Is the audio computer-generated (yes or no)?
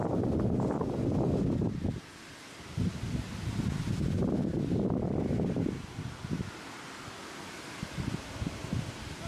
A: no